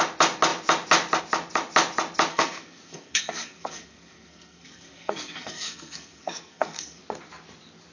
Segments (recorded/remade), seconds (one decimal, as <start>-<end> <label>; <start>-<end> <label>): 0.0-2.3 recorded; 2.3-7.0 remade; 7.0-7.9 recorded